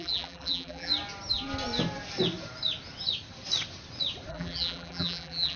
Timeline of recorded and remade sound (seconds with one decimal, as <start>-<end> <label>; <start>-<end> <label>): 0.0-0.9 remade; 0.9-4.3 recorded; 4.3-5.6 remade